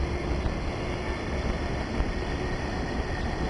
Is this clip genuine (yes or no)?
yes